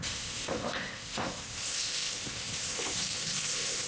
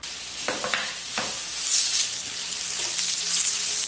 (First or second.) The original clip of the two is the second